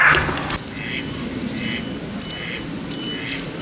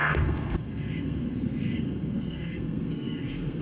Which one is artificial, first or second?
second